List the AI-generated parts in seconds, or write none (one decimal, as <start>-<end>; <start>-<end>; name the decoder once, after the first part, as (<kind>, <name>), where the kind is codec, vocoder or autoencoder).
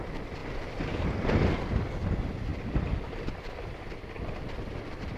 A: none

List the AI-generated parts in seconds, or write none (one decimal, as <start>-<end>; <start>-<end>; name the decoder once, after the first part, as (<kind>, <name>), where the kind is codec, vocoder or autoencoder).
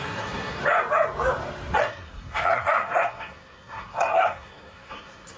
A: 0.0-0.6 (codec, SNAC); 1.8-5.4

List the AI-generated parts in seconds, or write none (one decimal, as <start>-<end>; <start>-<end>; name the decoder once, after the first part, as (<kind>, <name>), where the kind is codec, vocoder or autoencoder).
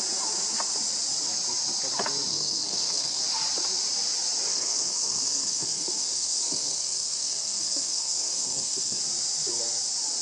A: 2.3-3.2 (codec, SNAC); 4.5-9.0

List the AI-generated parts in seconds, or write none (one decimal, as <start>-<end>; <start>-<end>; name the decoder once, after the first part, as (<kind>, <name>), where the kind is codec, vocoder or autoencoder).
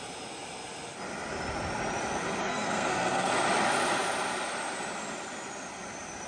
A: 2.4-3.3 (codec, SNAC)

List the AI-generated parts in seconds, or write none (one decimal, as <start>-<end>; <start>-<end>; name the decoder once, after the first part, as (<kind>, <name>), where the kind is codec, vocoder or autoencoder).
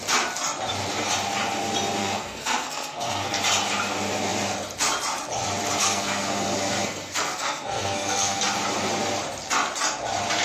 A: 2.0-3.4 (codec, SNAC); 5.8-8.4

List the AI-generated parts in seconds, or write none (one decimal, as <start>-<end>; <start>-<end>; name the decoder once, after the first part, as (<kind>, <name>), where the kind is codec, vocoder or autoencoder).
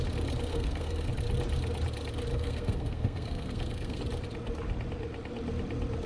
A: 0.5-1.1 (codec, SNAC); 2.3-4.0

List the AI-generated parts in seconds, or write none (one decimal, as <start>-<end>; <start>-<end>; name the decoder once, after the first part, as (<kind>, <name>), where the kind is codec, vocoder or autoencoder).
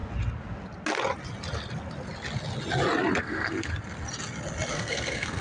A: 3.2-3.7 (codec, SNAC); 4.7-5.4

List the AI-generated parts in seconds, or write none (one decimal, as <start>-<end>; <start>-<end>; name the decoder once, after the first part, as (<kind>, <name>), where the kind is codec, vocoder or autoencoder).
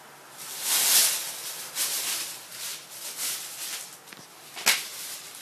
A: none